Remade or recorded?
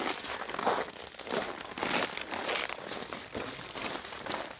recorded